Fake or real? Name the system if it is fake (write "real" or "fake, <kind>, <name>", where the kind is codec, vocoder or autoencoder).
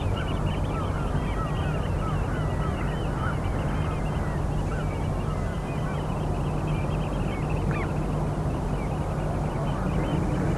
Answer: real